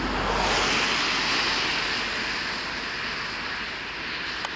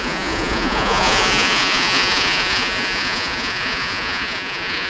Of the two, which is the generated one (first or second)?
second